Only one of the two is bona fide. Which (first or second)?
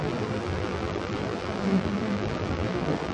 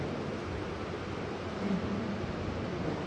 second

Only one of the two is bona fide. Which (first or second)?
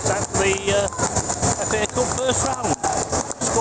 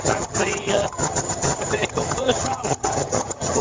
first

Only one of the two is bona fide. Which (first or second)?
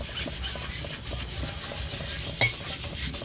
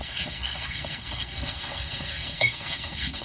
first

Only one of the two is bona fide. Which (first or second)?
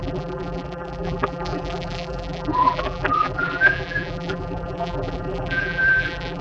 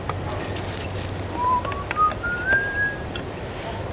second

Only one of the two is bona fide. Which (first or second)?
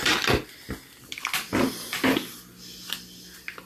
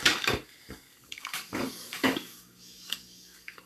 first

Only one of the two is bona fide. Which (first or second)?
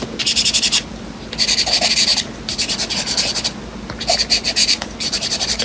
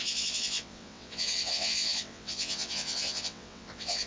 first